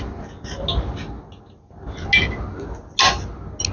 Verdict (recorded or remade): recorded